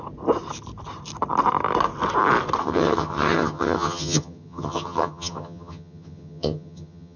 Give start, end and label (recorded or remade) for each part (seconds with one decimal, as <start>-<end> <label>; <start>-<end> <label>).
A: 0.0-2.6 recorded; 2.6-7.2 remade

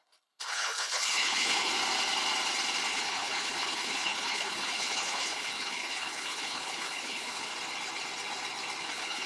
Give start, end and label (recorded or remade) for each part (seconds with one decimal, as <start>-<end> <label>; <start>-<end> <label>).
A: 0.0-1.7 remade; 1.7-2.9 recorded; 2.9-7.5 remade; 7.5-8.8 recorded; 8.8-9.3 remade

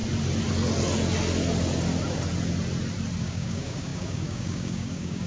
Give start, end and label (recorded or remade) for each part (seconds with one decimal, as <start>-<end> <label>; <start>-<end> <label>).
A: 0.0-3.2 recorded; 3.2-5.3 remade

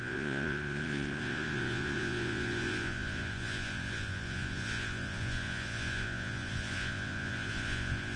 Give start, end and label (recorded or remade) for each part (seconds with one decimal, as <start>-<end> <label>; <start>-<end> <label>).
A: 0.0-8.2 remade

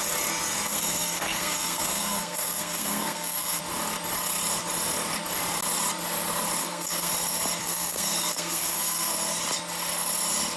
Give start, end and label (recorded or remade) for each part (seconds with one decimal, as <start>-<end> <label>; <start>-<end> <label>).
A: 0.0-0.7 recorded; 0.7-3.6 remade; 3.6-6.6 recorded; 6.6-7.1 remade; 7.1-7.6 recorded; 7.6-9.1 remade; 9.1-10.6 recorded

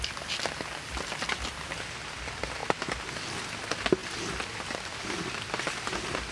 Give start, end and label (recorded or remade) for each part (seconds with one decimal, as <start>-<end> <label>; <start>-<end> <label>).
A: 0.0-6.3 recorded

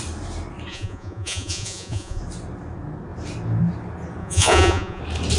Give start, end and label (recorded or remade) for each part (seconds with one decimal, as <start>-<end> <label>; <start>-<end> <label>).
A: 0.0-0.7 recorded; 0.7-2.2 remade; 2.2-4.2 recorded; 4.2-5.0 remade; 5.0-5.4 recorded